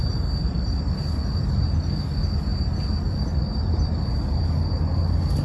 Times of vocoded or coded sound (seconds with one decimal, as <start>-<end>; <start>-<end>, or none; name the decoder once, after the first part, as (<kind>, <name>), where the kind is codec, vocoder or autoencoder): none